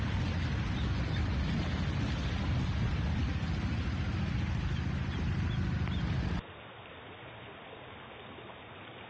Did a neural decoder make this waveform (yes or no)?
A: no